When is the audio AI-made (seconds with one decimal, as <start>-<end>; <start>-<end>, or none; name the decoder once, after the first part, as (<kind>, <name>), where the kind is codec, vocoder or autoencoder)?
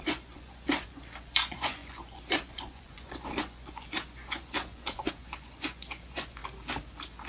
0.0-6.4 (vocoder, Vocos)